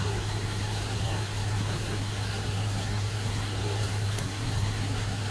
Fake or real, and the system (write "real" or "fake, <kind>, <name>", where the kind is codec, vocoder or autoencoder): fake, codec, SNAC